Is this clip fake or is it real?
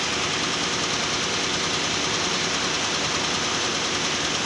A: real